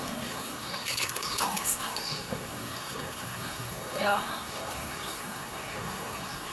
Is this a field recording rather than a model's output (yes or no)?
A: no